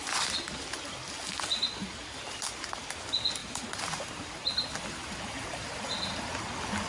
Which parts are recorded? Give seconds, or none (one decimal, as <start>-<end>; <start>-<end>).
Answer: 0.0-6.9